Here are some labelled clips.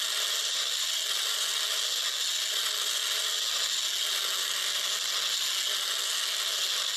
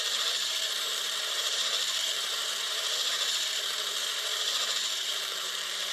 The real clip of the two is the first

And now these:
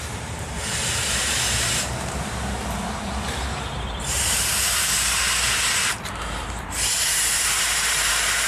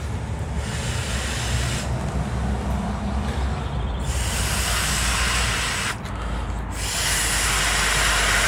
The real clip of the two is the second